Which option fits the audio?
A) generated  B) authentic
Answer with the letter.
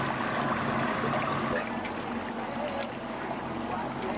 B